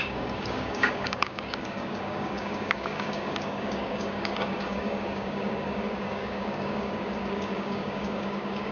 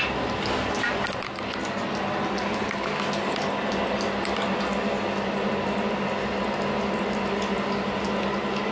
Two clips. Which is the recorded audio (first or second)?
second